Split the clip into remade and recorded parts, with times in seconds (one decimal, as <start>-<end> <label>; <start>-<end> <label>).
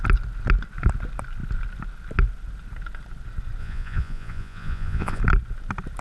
0.0-3.6 recorded; 3.6-5.2 remade; 5.2-6.0 recorded